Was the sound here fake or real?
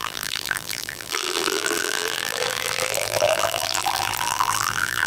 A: fake